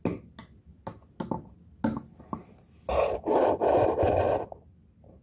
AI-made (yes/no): no